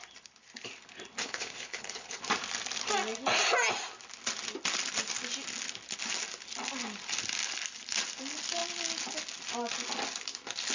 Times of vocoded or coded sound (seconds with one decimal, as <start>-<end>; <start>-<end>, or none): 1.2-2.2